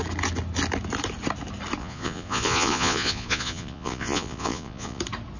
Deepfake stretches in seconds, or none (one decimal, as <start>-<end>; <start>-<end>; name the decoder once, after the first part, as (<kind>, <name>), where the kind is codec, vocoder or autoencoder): 1.8-5.0 (vocoder, Vocos)